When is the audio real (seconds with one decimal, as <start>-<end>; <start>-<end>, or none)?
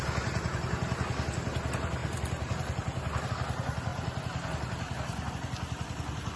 0.0-6.4